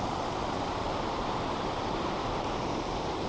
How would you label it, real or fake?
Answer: fake